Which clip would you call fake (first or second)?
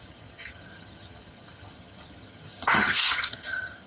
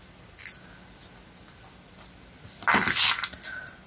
first